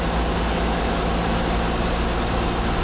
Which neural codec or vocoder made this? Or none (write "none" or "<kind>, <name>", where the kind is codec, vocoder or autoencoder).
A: none